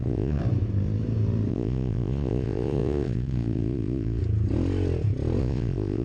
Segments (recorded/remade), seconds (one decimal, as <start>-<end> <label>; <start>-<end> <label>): 0.0-0.4 remade; 0.4-1.5 recorded; 1.5-4.2 remade; 4.2-5.4 recorded; 5.4-6.0 remade